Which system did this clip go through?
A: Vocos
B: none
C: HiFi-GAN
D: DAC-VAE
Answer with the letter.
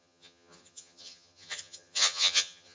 C